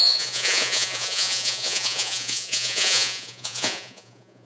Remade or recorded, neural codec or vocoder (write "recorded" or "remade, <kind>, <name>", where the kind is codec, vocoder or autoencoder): remade, vocoder, Vocos